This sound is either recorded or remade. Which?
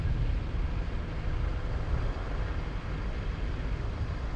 recorded